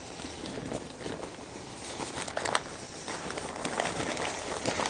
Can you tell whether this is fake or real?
real